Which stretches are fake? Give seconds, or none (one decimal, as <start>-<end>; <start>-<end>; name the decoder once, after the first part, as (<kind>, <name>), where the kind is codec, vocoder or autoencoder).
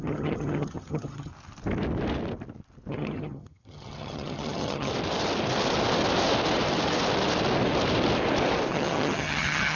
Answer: 0.0-1.3 (vocoder, HiFi-GAN); 2.9-4.9; 8.7-9.8